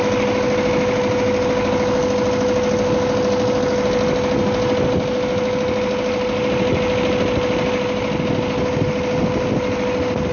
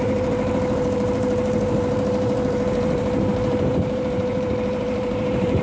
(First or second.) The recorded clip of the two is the first